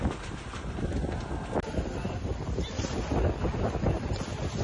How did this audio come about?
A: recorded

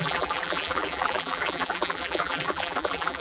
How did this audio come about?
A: remade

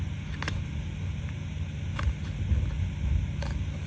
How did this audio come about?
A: recorded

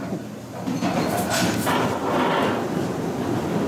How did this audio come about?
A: recorded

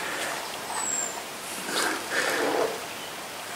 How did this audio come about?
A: recorded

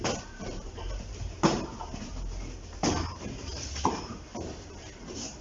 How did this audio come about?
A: remade